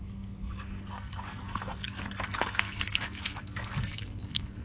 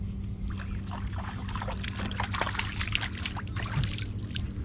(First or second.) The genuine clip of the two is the second